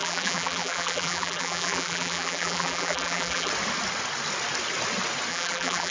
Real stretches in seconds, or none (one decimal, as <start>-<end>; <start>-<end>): 3.5-5.3